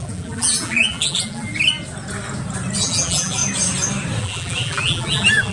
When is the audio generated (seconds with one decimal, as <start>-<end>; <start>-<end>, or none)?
0.0-1.5; 2.8-3.4; 4.2-5.5